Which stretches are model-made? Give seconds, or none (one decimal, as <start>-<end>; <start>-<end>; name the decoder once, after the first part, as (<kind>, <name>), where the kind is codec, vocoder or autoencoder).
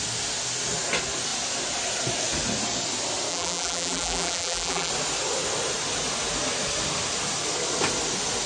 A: 3.3-4.9 (vocoder, BigVGAN v2)